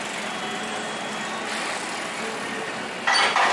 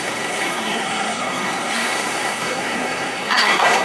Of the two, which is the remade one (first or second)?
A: second